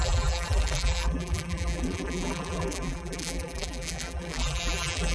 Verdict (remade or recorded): remade